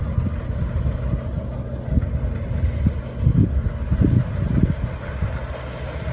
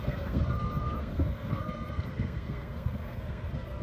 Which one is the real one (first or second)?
first